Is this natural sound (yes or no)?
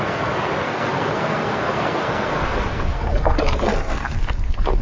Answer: no